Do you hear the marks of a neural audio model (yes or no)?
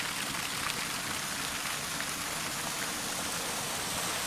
no